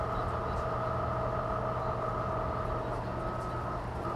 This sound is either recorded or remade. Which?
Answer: recorded